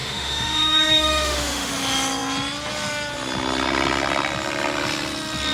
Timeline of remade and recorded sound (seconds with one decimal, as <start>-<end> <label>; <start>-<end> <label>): 0.0-1.7 remade; 1.7-5.5 recorded